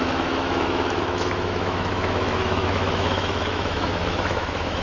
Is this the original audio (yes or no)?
no